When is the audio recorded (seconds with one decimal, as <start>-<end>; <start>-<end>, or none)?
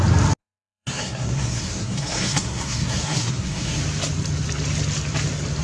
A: 0.0-0.4; 3.8-5.6